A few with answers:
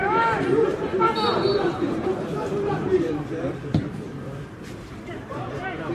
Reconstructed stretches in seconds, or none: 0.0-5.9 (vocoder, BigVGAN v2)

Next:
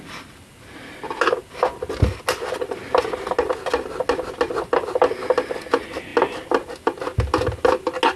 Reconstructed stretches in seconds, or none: none

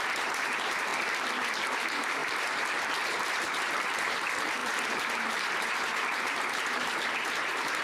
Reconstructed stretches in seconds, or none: 0.0-0.9 (vocoder, BigVGAN v2); 1.6-7.8

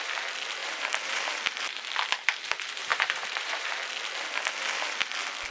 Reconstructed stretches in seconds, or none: 0.6-1.2 (vocoder, BigVGAN v2); 2.9-3.7

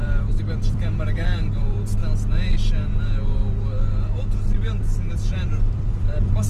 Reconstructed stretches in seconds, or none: 0.0-2.0 (vocoder, BigVGAN v2); 5.1-6.5

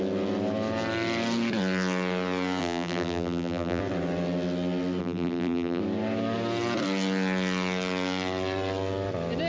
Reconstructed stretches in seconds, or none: 2.6-3.8 (vocoder, BigVGAN v2); 5.0-5.8

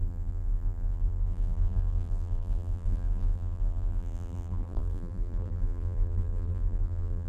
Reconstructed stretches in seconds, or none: 0.0-7.3 (vocoder, BigVGAN v2)